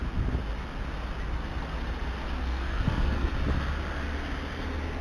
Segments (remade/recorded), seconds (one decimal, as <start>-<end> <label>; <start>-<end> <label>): 0.0-2.4 recorded; 2.4-3.3 remade; 3.3-5.0 recorded